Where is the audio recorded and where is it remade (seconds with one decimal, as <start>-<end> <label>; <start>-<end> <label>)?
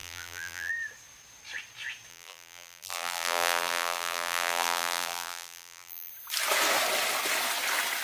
0.0-0.7 remade; 0.7-2.1 recorded; 2.1-6.1 remade; 6.1-8.0 recorded